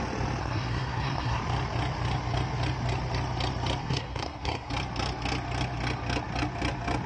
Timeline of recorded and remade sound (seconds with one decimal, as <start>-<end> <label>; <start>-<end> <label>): 0.0-0.4 recorded; 0.4-1.4 remade; 1.4-3.8 recorded; 3.8-4.7 remade; 4.7-7.1 recorded